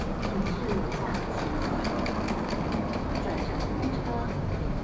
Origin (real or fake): real